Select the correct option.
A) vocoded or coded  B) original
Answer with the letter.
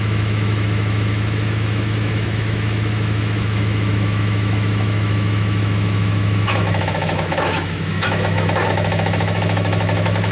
A